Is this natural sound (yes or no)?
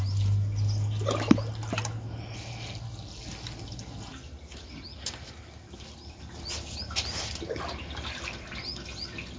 yes